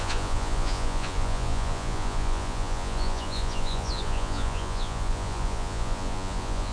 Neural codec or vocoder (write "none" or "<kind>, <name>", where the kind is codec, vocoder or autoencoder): vocoder, Vocos